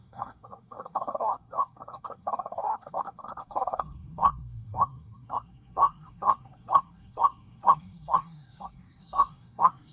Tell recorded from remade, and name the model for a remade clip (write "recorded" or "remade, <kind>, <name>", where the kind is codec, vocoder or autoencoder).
remade, codec, SNAC